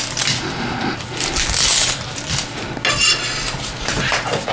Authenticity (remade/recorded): recorded